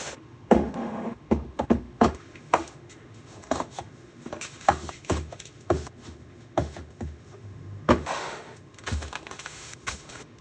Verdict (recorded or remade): remade